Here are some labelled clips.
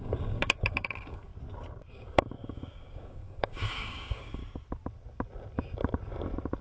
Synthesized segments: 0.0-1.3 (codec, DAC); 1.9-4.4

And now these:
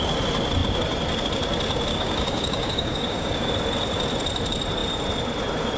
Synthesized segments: 1.9-3.5 (codec, DAC)

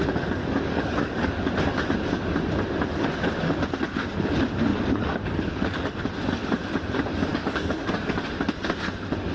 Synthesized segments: 0.4-1.5 (codec, DAC); 4.7-6.0; 7.3-8.2

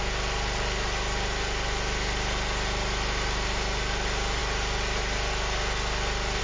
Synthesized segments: none

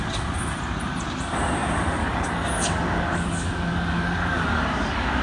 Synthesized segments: 2.0-5.2 (codec, DAC)

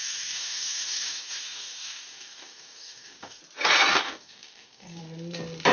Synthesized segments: 0.0-3.4 (codec, DAC); 3.9-5.0

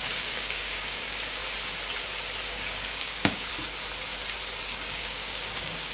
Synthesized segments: 0.0-1.4 (codec, DAC); 2.5-3.5; 4.6-5.9